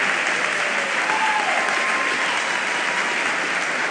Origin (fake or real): real